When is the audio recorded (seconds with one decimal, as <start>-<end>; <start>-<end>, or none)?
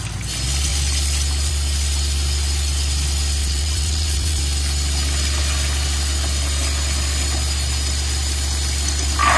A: 0.0-3.4; 4.4-9.4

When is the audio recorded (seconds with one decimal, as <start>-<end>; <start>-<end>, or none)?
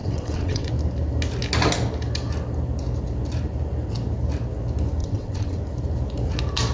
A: 0.7-5.0; 5.6-6.7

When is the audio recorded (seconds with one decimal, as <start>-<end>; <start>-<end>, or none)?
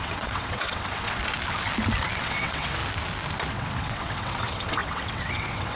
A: 1.2-2.2; 2.8-3.5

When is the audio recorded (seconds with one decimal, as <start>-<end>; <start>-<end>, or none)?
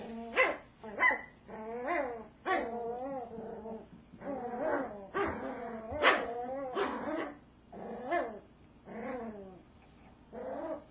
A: 0.0-10.9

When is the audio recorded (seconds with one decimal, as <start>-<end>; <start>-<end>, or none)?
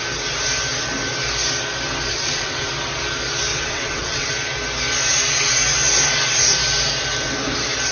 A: 0.0-2.1; 2.7-3.5; 4.3-7.9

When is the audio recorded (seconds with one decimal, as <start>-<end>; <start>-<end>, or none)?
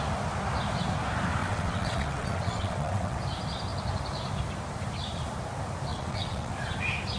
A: 0.0-1.4; 3.2-5.9; 6.5-7.2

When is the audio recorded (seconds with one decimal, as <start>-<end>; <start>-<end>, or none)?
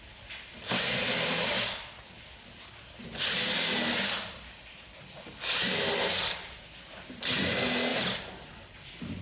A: 0.0-9.2